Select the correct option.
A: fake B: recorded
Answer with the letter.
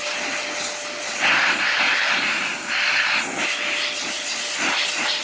B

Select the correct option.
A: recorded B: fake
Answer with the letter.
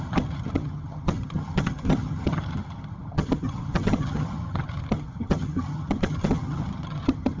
B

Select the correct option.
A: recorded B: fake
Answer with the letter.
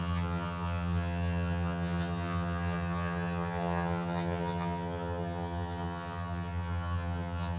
B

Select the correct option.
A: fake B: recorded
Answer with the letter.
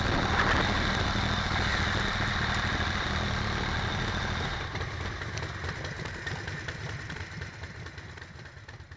B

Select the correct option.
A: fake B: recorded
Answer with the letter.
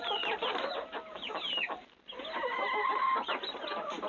B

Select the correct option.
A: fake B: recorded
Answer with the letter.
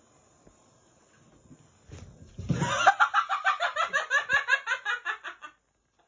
B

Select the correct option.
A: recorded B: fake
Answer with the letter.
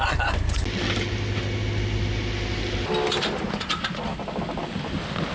A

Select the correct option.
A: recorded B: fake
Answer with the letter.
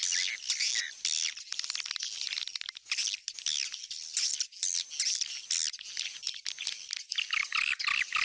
A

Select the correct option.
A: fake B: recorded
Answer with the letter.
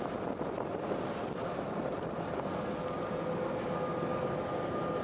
B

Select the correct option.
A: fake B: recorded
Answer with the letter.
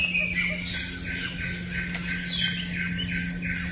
B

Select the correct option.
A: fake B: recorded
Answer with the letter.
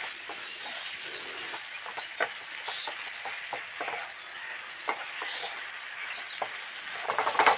B